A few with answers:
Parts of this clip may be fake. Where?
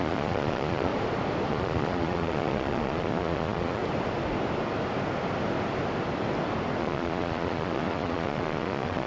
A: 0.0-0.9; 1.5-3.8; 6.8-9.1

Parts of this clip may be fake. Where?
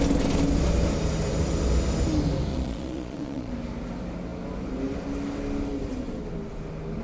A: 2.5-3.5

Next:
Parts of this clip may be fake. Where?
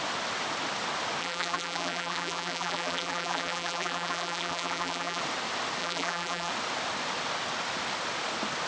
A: 1.2-5.2; 5.8-6.5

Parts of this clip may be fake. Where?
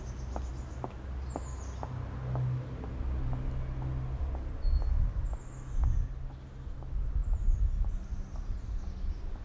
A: none